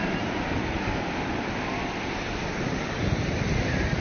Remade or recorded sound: recorded